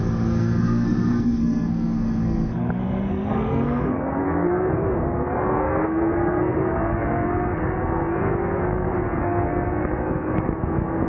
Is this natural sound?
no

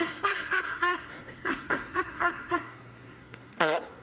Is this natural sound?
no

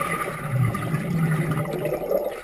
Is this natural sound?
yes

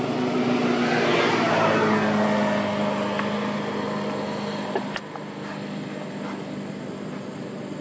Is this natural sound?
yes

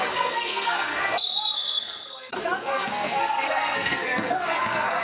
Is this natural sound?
no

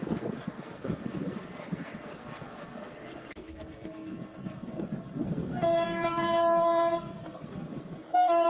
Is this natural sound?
no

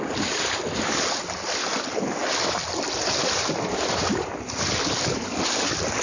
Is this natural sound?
yes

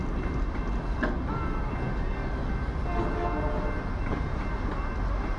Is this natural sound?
yes